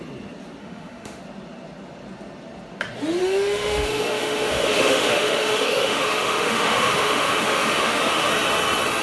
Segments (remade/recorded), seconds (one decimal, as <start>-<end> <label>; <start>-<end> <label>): 0.0-0.6 recorded; 0.6-1.2 remade; 1.2-3.2 recorded; 3.2-8.3 remade; 8.3-9.0 recorded

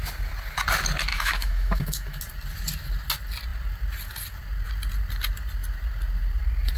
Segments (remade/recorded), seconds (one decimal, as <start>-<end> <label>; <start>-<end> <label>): 0.0-1.1 recorded; 1.1-2.2 remade; 2.2-6.8 recorded